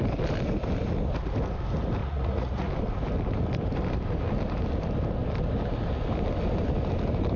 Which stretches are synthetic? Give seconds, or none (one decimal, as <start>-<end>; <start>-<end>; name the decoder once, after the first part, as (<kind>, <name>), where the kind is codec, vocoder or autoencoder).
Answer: 2.0-2.7 (vocoder, Vocos)